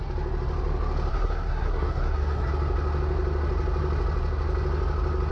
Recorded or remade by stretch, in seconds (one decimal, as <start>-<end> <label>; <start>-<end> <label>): 0.0-1.1 recorded; 1.1-2.5 remade; 2.5-5.3 recorded